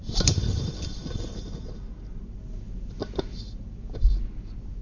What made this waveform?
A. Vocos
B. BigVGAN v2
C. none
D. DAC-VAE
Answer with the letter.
B